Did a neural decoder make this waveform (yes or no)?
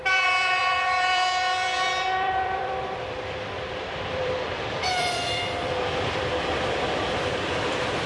yes